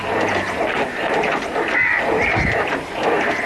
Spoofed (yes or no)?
yes